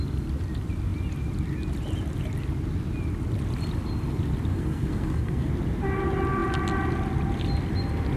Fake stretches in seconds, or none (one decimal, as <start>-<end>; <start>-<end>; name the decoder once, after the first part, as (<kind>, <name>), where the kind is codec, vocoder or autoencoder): 4.5-5.5 (codec, SNAC)